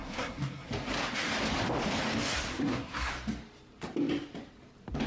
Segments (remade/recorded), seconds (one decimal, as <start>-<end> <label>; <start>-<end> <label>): 0.0-0.7 remade; 0.7-2.5 recorded; 2.5-3.1 remade; 3.1-5.1 recorded